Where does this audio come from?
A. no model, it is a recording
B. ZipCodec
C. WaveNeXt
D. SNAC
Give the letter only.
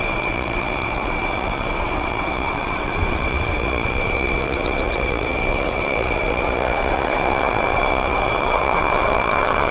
C